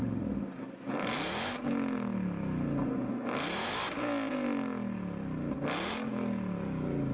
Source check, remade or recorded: recorded